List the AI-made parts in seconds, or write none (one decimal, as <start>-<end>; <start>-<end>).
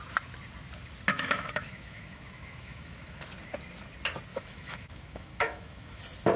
1.1-3.3; 4.3-6.0